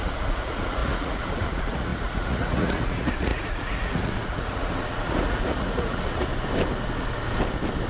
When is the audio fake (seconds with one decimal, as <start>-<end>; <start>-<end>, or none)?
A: 0.0-6.3